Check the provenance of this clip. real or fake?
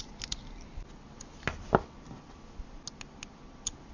real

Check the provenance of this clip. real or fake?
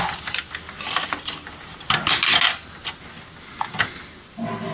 real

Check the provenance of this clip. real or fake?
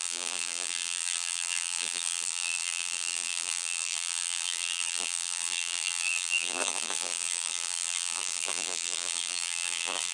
fake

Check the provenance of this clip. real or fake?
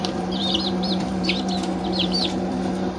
fake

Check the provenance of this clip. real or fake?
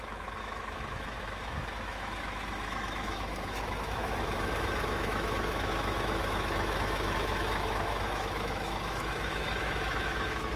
fake